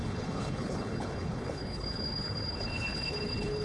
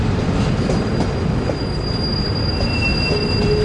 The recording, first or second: second